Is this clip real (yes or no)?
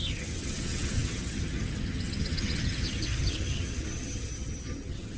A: no